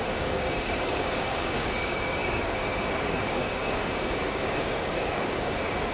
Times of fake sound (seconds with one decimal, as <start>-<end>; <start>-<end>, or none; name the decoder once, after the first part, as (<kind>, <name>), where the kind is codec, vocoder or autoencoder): 0.0-5.9 (codec, DAC)